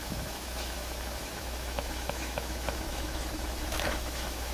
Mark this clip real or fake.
fake